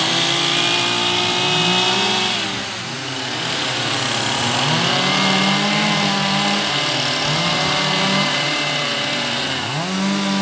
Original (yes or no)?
yes